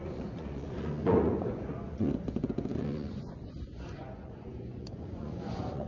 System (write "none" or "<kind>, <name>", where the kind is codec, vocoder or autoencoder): vocoder, Vocos